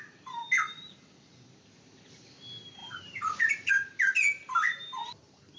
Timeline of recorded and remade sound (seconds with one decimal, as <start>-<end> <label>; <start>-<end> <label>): 0.0-2.8 recorded; 2.8-3.7 remade; 3.7-5.6 recorded